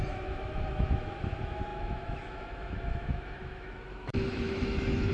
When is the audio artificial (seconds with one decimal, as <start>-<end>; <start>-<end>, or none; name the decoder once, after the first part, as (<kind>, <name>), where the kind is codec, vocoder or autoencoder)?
0.0-5.1 (autoencoder, DAC-VAE)